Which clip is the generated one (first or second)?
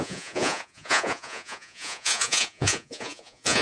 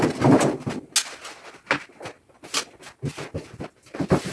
first